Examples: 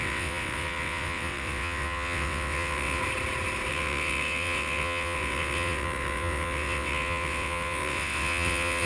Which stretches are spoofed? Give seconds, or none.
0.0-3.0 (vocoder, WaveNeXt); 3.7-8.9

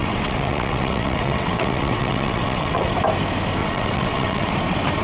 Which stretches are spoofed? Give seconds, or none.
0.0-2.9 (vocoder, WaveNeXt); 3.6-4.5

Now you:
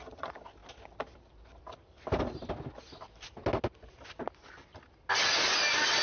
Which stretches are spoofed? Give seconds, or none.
none

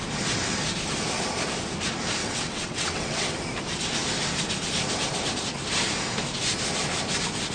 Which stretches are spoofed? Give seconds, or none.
2.2-3.3 (vocoder, WaveNeXt)